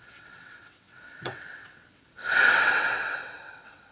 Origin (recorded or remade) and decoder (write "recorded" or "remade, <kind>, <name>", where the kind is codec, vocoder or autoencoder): remade, vocoder, WaveNeXt